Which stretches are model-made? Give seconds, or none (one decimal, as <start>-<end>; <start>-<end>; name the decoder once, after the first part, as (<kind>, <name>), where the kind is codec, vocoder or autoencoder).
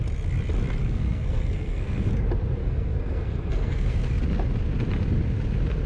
0.8-2.1 (codec, SNAC); 2.6-4.1